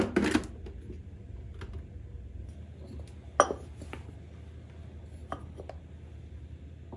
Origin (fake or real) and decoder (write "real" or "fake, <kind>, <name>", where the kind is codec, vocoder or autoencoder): real